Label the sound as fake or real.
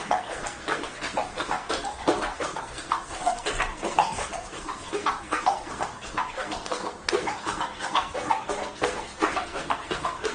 fake